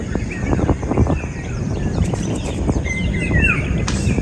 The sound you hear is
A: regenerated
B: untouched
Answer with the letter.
A